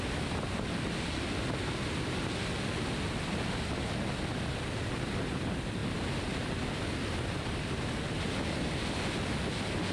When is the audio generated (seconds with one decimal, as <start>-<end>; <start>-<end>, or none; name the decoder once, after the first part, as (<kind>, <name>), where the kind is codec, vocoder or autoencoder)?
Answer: none